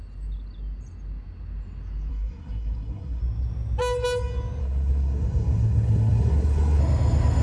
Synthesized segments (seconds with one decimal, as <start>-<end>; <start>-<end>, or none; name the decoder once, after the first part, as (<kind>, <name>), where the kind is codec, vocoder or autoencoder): 2.1-3.2 (codec, SNAC); 4.6-6.8